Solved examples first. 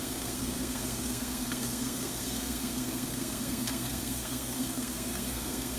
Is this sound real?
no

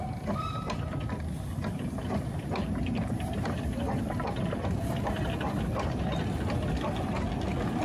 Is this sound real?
yes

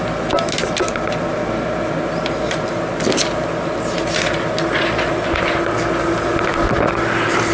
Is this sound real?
yes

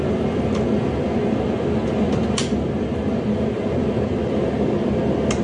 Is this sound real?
yes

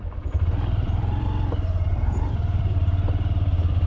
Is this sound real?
no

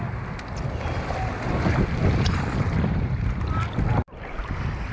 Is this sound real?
yes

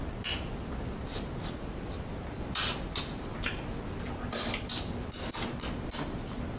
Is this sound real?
yes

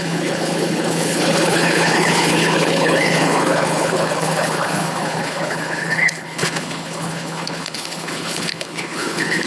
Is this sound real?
no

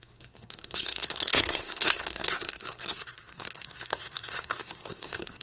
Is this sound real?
no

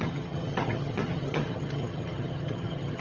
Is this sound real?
no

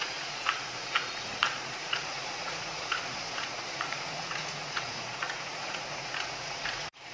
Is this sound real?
no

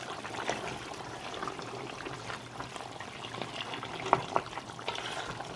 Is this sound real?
yes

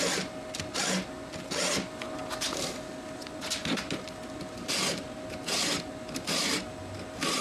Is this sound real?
yes